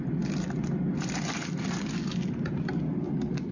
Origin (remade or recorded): recorded